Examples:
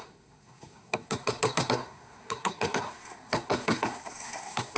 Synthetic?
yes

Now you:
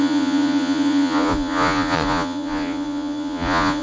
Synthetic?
yes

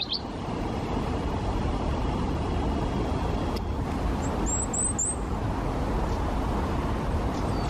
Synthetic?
no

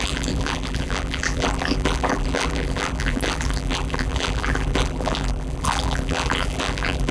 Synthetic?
yes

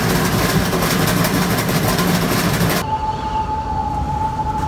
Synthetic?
no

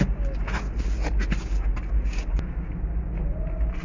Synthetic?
no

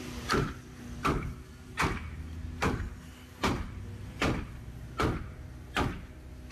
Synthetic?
no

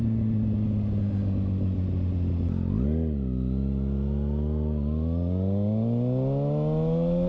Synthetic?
no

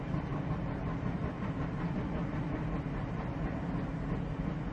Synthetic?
no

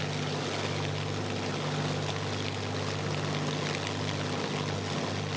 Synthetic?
no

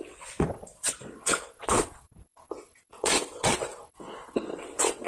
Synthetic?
yes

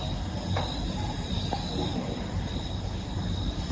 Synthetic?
no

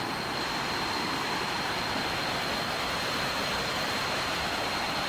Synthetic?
no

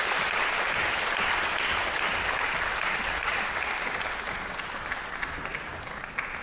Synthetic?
no